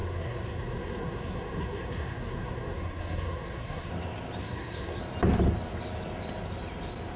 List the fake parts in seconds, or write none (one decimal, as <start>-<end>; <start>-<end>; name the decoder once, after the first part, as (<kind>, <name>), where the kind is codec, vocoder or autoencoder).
0.0-3.9 (codec, SNAC); 4.4-5.0